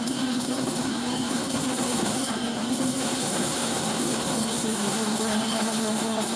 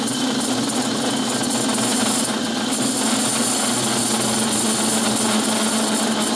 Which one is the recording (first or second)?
second